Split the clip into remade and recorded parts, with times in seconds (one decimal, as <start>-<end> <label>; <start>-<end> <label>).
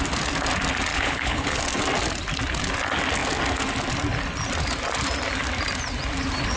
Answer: 0.0-0.9 recorded; 0.9-1.6 remade; 1.6-6.6 recorded